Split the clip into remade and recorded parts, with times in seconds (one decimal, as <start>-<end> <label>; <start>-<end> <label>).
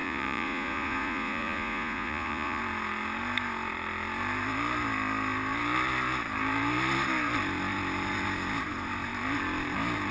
0.0-2.6 remade; 2.6-10.1 recorded